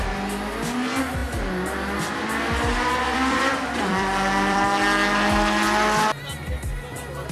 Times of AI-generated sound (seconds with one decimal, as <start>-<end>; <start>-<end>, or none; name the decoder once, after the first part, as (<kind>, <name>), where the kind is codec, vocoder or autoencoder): 2.7-4.6 (vocoder, BigVGAN v2)